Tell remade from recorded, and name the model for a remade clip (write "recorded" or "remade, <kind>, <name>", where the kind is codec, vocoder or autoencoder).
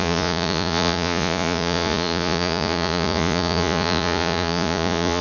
remade, vocoder, Vocos